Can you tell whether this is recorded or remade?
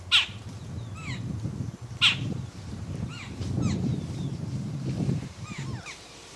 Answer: recorded